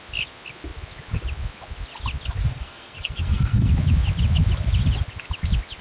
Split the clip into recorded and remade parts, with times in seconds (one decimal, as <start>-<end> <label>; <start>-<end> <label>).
0.0-2.4 recorded; 2.4-3.7 remade; 3.7-5.8 recorded